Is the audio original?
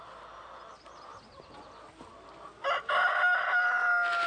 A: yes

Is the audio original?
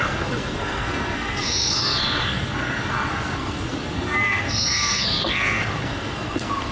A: no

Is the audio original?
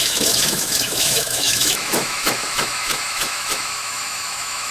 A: no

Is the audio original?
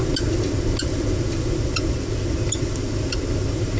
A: yes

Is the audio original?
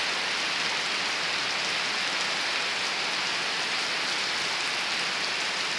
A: yes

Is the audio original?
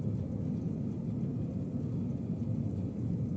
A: yes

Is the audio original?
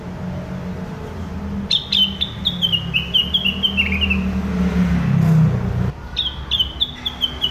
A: yes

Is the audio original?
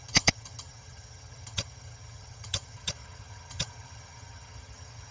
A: no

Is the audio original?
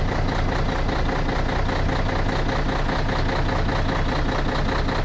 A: yes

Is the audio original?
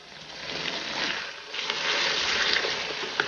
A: no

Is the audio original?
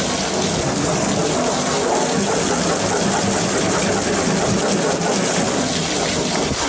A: yes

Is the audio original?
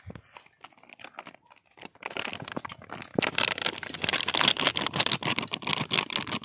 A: yes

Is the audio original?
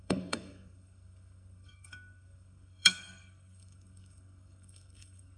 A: no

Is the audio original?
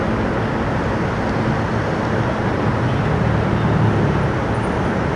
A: yes